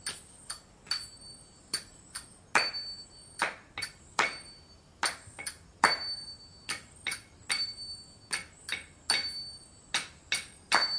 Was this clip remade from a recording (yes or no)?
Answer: no